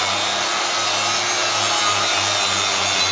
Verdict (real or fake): real